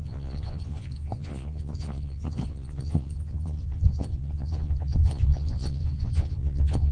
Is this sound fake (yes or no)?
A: yes